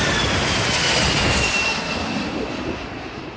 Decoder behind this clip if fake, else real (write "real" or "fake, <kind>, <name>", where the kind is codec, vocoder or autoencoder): real